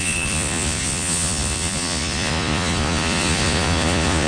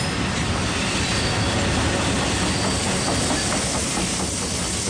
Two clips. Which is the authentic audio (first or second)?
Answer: second